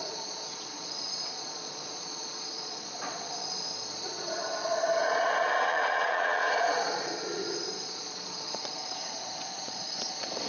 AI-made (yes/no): yes